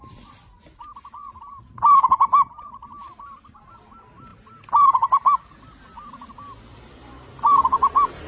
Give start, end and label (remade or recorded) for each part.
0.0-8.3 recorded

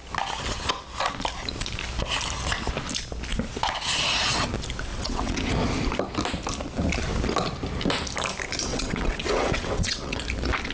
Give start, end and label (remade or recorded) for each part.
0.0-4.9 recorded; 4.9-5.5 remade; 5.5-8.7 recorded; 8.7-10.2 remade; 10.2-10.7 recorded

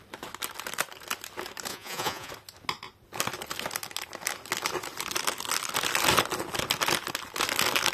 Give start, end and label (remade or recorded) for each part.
0.0-1.7 recorded; 1.7-2.3 remade; 2.3-7.9 recorded

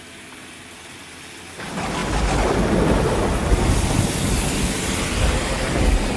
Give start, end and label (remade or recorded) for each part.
0.0-6.2 recorded

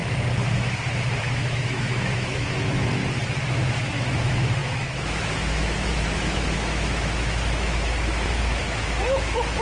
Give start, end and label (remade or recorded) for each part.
0.0-1.2 recorded; 1.2-3.0 remade; 3.0-3.5 recorded; 3.5-9.6 remade

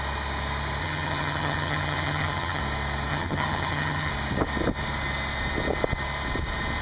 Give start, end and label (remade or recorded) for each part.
0.0-0.8 recorded; 0.8-2.6 remade; 2.6-3.1 recorded; 3.1-4.1 remade; 4.1-6.8 recorded